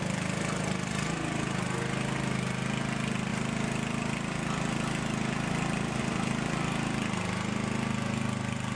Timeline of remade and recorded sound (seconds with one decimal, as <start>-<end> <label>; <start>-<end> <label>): 0.0-8.8 recorded